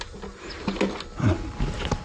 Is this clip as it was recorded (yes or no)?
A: yes